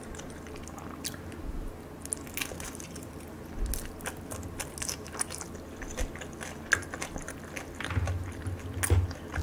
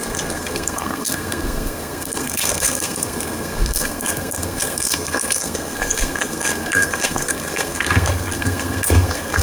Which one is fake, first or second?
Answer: second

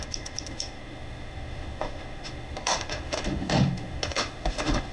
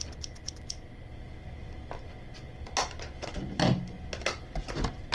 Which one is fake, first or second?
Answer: first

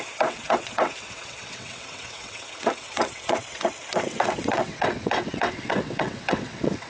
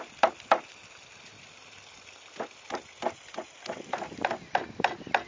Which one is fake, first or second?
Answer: first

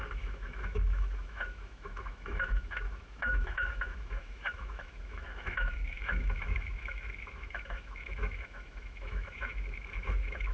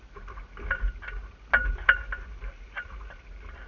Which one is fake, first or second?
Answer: first